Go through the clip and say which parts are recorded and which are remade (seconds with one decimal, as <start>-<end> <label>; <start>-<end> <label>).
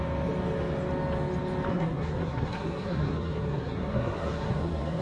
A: 0.0-1.7 recorded; 1.7-5.0 remade